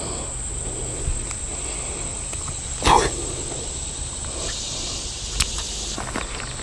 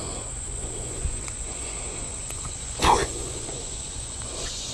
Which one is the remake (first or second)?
second